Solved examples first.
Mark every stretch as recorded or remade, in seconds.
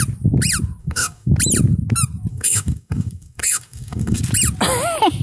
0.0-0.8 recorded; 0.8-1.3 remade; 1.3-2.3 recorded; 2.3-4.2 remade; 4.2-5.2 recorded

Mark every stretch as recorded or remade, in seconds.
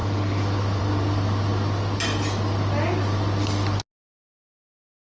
0.0-5.2 recorded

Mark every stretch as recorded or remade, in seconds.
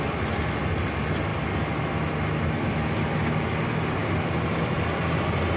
0.0-5.6 recorded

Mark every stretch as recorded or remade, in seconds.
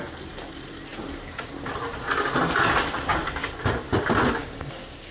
0.0-4.4 recorded; 4.4-5.1 remade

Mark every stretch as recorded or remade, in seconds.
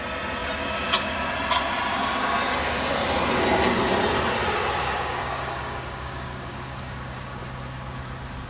0.0-4.8 recorded; 4.8-7.4 remade; 7.4-8.5 recorded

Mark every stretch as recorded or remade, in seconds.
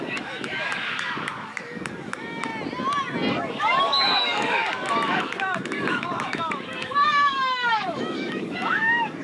0.0-2.5 remade; 2.5-3.3 recorded; 3.3-9.2 remade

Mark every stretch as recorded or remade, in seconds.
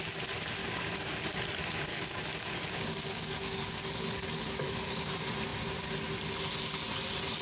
0.0-0.6 recorded; 0.6-1.3 remade; 1.3-1.9 recorded; 1.9-5.1 remade; 5.1-7.4 recorded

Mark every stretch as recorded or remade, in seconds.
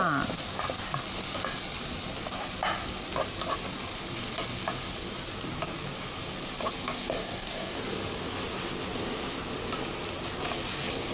0.0-7.2 recorded; 7.2-7.8 remade; 7.8-11.1 recorded